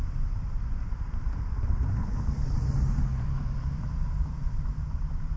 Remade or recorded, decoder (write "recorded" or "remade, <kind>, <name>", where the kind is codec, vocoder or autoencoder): remade, vocoder, BigVGAN v2